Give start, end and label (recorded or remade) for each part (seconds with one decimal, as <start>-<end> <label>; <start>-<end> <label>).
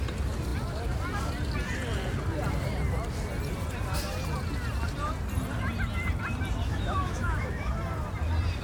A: 0.0-6.7 recorded; 6.7-7.7 remade; 7.7-8.6 recorded